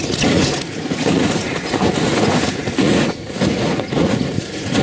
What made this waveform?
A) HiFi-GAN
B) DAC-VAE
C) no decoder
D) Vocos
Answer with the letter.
D